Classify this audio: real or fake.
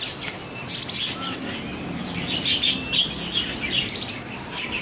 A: real